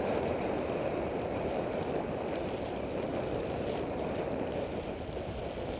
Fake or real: real